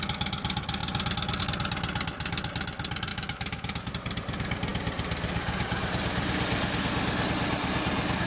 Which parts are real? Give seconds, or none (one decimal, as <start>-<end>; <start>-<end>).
0.0-3.1; 3.9-8.3